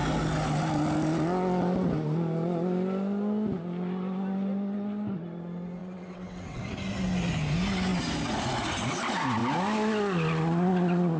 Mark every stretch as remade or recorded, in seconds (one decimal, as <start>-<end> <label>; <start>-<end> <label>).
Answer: 0.0-5.8 recorded; 5.8-6.6 remade; 6.6-11.2 recorded